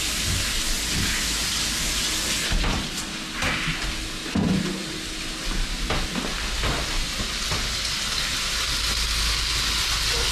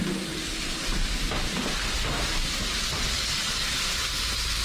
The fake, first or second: second